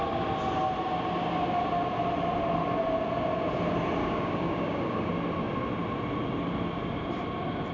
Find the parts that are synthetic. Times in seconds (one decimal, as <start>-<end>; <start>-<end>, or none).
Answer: 4.0-5.1

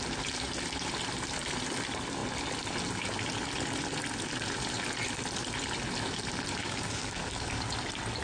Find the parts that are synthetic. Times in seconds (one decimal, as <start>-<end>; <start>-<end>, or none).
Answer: 6.6-7.7

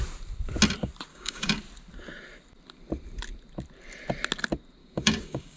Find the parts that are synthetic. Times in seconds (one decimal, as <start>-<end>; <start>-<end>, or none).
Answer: 1.1-1.6; 4.8-5.6

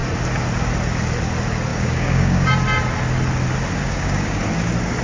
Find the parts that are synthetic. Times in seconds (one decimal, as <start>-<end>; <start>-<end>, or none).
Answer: 1.7-2.5; 3.8-4.4

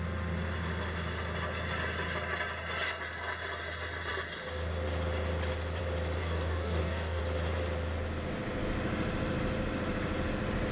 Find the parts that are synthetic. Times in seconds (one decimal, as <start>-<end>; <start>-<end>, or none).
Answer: 6.2-7.2

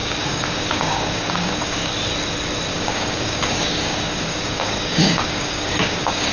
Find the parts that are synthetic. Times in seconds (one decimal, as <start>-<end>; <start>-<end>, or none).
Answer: 0.0-1.9; 2.7-6.3